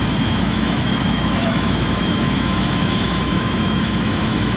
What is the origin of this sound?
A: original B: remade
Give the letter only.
B